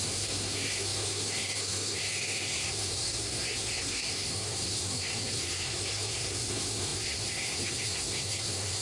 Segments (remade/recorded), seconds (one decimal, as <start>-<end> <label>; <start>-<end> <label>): 0.0-8.8 remade